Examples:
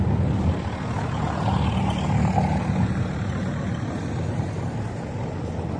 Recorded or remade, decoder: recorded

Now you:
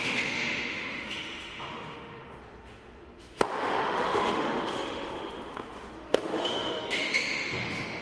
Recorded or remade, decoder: remade, autoencoder, DAC-VAE